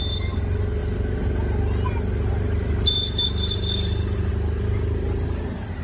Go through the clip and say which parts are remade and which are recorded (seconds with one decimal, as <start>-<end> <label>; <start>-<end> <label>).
0.0-5.8 recorded